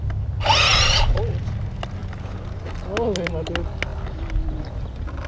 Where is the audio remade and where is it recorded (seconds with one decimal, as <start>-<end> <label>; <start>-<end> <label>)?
0.0-0.7 recorded; 0.7-1.4 remade; 1.4-5.3 recorded

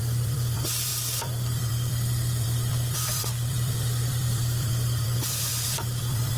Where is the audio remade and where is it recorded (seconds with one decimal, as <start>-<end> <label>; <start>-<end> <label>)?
0.0-6.4 remade

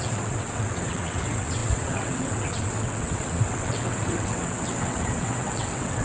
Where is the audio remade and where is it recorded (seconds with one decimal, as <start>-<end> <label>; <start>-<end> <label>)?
0.0-6.0 remade

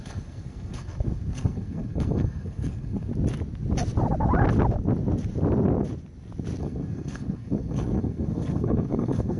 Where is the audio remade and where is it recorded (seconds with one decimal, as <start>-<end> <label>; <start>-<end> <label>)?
0.0-3.1 remade; 3.1-6.6 recorded; 6.6-9.4 remade

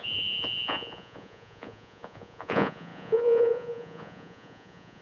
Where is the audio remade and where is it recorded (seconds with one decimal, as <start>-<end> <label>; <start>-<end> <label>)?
0.0-5.0 remade

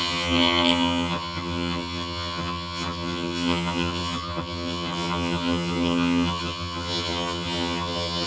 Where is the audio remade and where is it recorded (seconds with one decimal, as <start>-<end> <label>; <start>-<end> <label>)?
0.0-8.3 remade

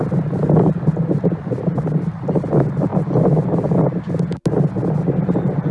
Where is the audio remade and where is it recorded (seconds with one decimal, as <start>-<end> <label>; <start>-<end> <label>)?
0.0-5.7 recorded